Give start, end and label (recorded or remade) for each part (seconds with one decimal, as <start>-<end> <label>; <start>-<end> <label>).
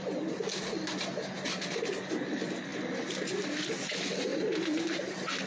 0.0-4.3 recorded; 4.3-4.8 remade; 4.8-5.5 recorded